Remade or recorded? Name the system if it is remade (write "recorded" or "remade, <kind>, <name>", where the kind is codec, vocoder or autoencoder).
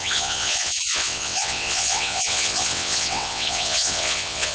remade, vocoder, WaveNeXt